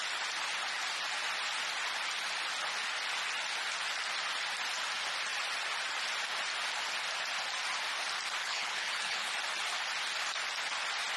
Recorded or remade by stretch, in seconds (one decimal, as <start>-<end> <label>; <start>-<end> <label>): 0.0-8.4 recorded; 8.4-9.3 remade; 9.3-11.2 recorded